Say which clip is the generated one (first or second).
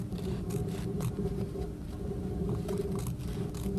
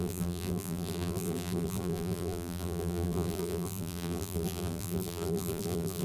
second